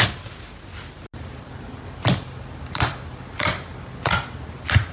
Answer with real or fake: real